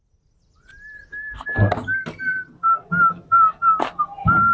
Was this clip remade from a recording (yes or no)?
no